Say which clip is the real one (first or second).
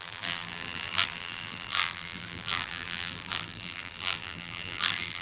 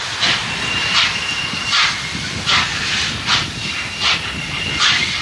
second